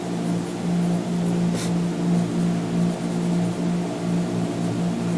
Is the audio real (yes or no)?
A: yes